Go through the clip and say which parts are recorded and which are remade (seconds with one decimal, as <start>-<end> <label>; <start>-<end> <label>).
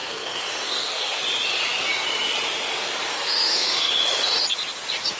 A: 0.0-1.2 remade; 1.2-3.1 recorded; 3.1-3.9 remade; 3.9-5.2 recorded